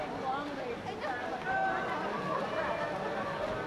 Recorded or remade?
recorded